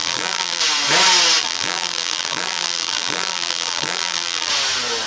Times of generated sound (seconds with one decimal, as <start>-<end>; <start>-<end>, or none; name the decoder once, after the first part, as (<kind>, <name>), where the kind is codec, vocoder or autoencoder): 0.0-0.6 (vocoder, BigVGAN v2); 1.4-4.5